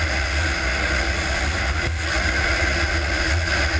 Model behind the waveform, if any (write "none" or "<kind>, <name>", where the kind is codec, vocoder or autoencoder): vocoder, Vocos